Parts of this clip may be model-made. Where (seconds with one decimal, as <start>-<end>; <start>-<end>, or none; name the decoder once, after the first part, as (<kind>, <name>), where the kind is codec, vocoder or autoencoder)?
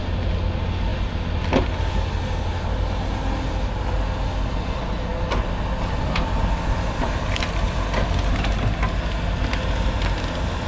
none